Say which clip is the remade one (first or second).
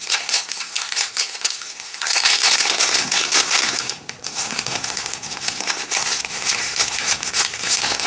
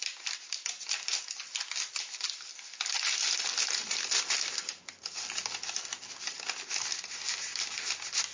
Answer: first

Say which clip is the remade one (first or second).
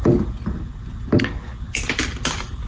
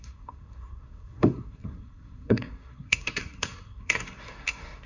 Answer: second